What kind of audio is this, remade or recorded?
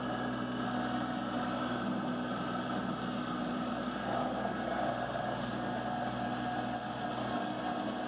recorded